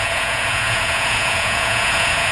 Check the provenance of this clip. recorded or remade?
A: remade